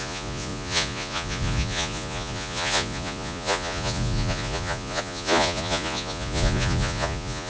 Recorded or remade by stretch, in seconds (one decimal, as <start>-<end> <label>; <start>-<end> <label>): 0.0-7.5 remade